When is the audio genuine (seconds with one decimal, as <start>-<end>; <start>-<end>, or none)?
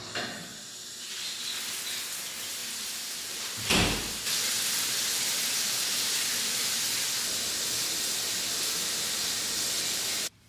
0.0-2.6; 6.7-10.5